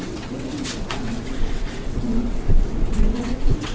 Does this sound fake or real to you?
fake